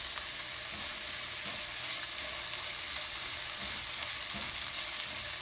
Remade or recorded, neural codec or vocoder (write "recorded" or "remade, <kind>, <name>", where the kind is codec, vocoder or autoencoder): recorded